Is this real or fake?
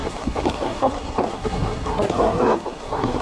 fake